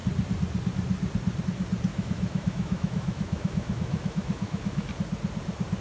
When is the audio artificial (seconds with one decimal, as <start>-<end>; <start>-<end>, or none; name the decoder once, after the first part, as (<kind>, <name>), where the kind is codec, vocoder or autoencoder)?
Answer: 1.9-4.9 (autoencoder, DAC-VAE)